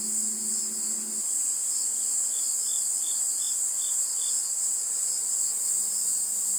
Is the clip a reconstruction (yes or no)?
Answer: no